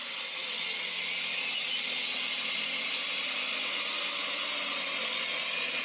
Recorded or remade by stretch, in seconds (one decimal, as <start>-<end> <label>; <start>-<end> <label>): 0.0-5.8 recorded